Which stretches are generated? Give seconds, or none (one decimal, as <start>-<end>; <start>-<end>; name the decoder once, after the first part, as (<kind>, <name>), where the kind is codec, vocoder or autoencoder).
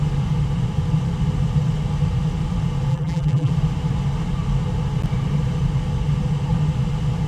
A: 2.9-3.5 (vocoder, BigVGAN v2)